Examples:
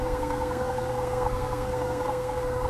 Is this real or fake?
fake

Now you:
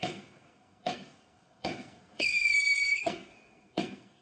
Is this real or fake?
fake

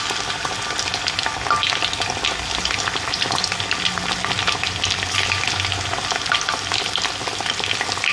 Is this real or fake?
real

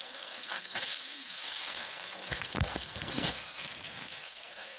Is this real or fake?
fake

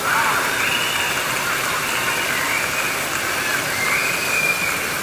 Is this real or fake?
real